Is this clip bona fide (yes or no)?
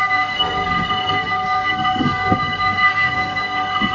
no